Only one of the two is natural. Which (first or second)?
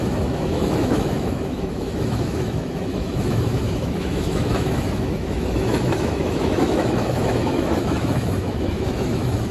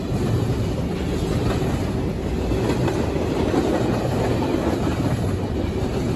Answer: second